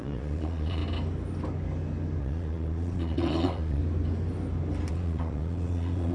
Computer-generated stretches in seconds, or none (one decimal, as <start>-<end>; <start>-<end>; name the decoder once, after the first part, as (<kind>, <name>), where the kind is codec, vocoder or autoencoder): 0.0-0.8 (vocoder, Vocos); 2.2-3.8; 4.9-6.1